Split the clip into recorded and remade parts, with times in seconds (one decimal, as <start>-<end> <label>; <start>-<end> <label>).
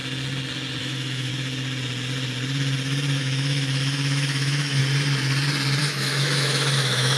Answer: 0.0-0.8 recorded; 0.8-1.3 remade; 1.3-3.2 recorded; 3.2-4.8 remade; 4.8-5.8 recorded; 5.8-7.2 remade